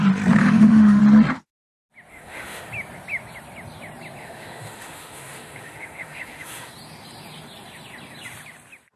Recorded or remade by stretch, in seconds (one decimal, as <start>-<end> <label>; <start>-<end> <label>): 0.0-0.4 recorded; 0.4-1.0 remade; 1.0-2.1 recorded; 2.1-2.7 remade; 2.7-4.2 recorded; 4.2-6.7 remade; 6.7-9.0 recorded